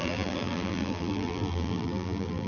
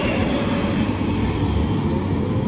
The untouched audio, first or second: second